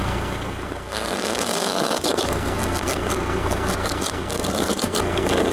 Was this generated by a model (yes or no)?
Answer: yes